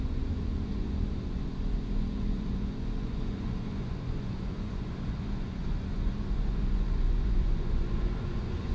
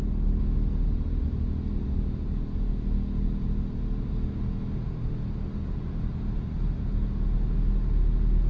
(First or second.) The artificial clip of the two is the first